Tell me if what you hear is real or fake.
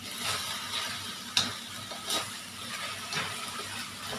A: fake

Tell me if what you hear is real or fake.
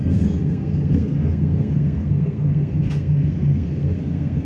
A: fake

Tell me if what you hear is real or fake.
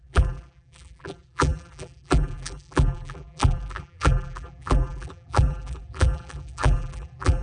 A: fake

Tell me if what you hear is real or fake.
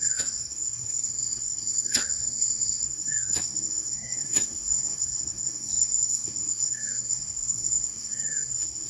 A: fake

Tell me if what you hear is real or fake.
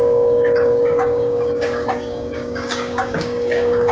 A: fake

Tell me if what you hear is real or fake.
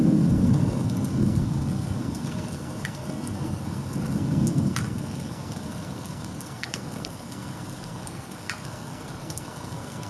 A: fake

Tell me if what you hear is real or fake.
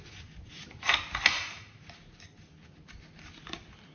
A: real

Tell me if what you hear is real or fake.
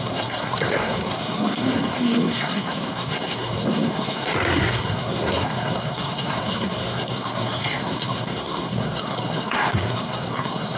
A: fake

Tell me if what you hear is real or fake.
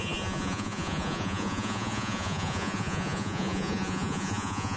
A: fake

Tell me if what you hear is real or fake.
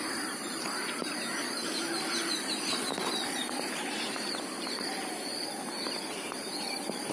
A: fake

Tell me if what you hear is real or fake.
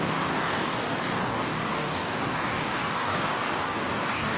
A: fake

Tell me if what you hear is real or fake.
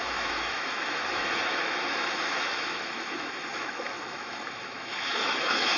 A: fake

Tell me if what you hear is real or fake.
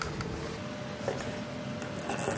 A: real